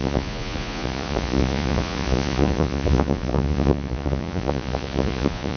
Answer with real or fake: fake